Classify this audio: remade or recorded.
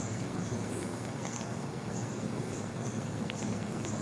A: remade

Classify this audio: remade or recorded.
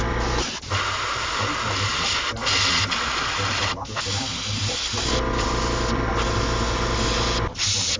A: recorded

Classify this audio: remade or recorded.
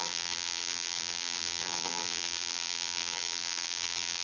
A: remade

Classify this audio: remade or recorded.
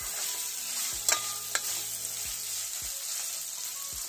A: recorded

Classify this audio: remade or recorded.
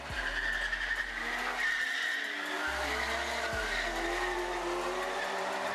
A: recorded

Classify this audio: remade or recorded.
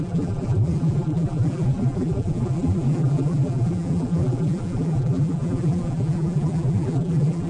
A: remade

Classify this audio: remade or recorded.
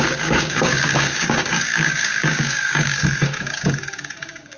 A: remade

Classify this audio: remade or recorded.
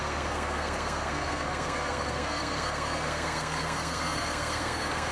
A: remade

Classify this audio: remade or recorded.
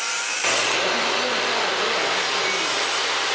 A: recorded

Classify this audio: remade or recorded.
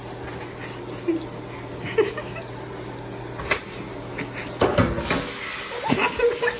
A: recorded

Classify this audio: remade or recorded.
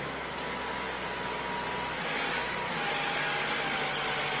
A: recorded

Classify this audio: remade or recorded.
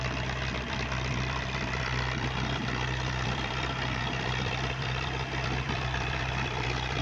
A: remade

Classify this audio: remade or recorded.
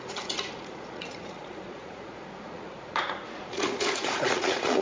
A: remade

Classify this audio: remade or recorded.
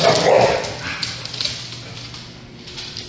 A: recorded